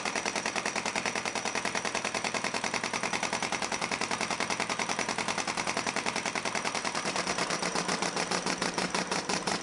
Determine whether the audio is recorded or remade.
remade